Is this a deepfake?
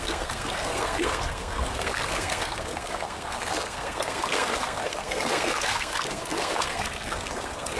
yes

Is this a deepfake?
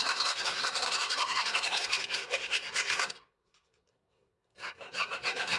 yes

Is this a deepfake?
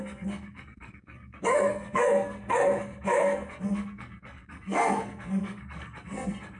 yes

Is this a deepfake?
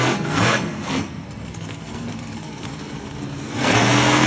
yes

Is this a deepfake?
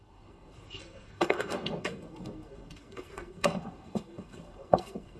yes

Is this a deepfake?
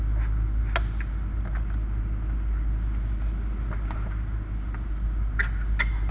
no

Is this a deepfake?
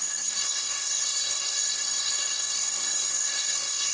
yes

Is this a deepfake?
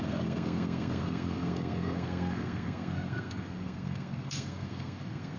yes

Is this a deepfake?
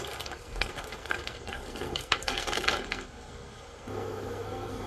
yes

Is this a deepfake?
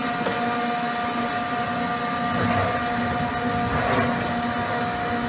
no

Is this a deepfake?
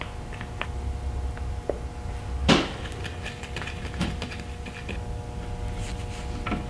no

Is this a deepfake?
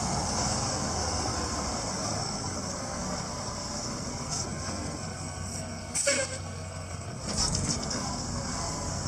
yes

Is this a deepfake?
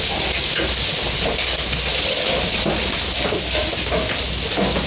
no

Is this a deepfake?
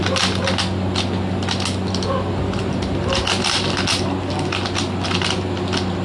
no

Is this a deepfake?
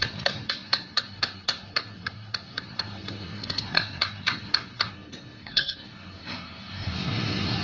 yes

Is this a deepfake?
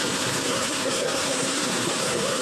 yes